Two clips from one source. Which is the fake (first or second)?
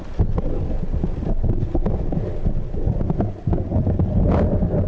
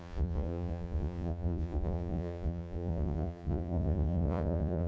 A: second